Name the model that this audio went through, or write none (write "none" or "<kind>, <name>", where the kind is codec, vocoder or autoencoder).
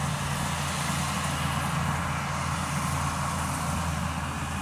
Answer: none